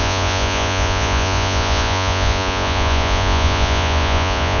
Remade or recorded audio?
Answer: remade